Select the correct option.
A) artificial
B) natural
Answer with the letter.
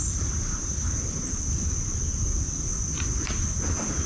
B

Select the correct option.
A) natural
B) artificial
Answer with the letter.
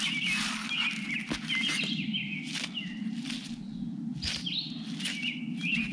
A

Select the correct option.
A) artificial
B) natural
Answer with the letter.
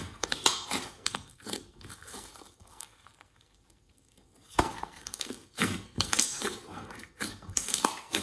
A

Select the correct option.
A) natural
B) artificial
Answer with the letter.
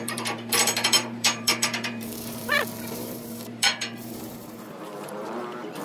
B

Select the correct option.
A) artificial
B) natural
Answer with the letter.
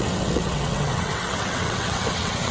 A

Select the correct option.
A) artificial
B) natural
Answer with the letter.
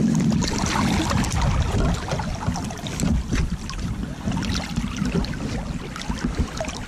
B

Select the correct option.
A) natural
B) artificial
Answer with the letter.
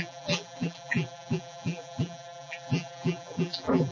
B